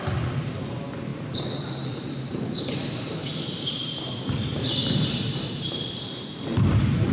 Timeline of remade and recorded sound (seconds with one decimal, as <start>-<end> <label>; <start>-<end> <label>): 0.0-1.1 recorded; 1.1-4.1 remade; 4.1-4.5 recorded; 4.5-5.1 remade; 5.1-7.1 recorded